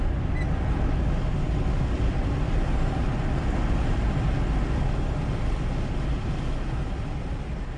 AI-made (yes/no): no